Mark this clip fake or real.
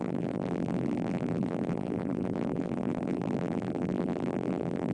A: fake